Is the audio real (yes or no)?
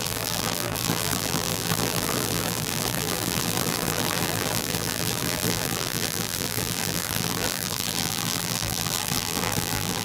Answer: no